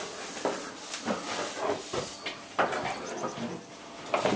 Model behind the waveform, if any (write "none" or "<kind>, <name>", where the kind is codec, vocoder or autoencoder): none